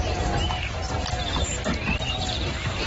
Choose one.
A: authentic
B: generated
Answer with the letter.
A